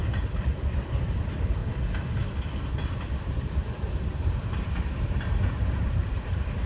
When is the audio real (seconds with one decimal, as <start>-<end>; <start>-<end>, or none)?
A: 0.0-0.5; 1.6-3.2; 3.6-4.5